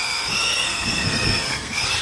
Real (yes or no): no